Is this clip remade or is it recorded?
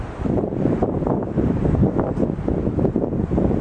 recorded